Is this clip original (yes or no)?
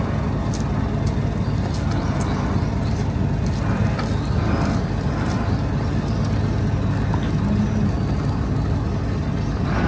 yes